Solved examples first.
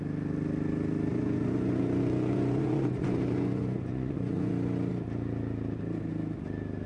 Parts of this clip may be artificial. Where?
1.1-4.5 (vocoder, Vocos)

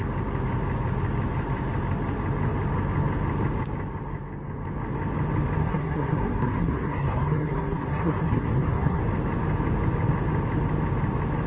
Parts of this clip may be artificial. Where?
5.6-9.0 (codec, SNAC)

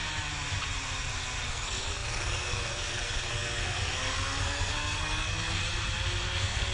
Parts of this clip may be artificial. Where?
1.5-5.6 (codec, SNAC); 6.2-6.7

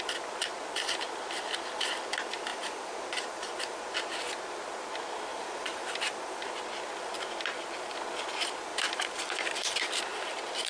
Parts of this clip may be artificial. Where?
2.5-3.8 (vocoder, BigVGAN v2); 5.3-6.4; 8.7-10.0

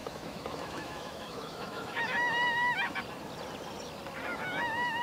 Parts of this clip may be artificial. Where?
0.0-3.0 (autoencoder, DAC-VAE); 4.3-5.0

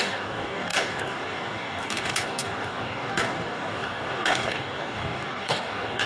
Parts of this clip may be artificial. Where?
0.0-6.1 (codec, DAC)

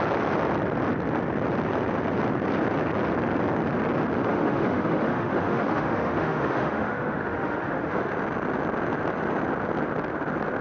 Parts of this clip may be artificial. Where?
4.3-8.1 (autoencoder, DAC-VAE)